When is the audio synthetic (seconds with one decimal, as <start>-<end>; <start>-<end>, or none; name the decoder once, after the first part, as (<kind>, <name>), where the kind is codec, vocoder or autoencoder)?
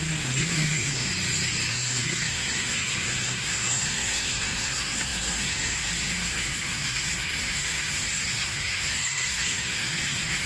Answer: 0.0-1.1 (codec, SNAC); 1.7-10.5